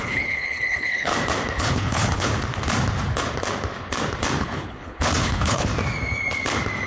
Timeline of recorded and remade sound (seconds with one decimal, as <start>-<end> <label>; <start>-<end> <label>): 0.0-1.1 remade; 1.1-1.6 recorded; 1.6-2.3 remade; 2.3-4.4 recorded; 4.4-5.7 remade; 5.7-6.9 recorded